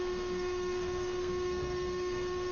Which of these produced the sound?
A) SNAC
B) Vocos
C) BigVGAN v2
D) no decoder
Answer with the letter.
A